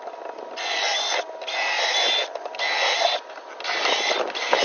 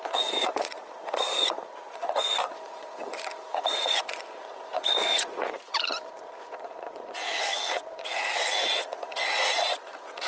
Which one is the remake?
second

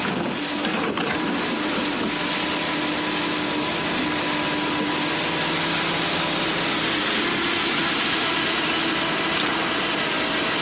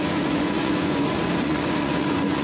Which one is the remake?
second